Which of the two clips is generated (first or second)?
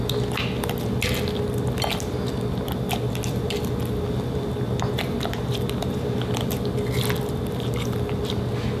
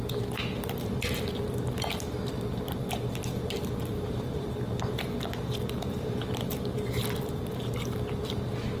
second